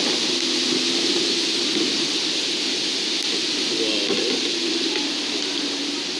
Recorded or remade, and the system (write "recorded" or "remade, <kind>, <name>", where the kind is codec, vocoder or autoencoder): recorded